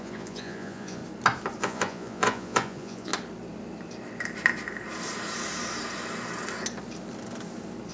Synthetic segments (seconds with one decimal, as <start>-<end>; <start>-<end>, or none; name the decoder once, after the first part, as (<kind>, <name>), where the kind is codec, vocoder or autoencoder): 0.0-1.0 (vocoder, Vocos); 1.6-3.1